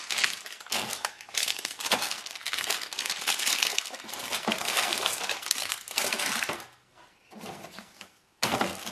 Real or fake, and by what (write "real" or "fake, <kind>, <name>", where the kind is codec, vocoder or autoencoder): fake, codec, SNAC